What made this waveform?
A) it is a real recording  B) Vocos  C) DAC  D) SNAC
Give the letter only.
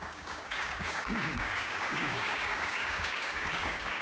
C